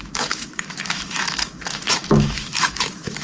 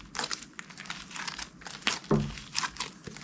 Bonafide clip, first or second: second